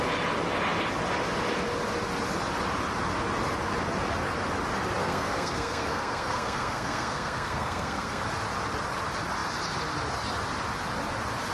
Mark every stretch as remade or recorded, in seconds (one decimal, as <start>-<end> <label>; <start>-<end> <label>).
0.0-5.0 recorded; 5.0-8.2 remade; 8.2-11.5 recorded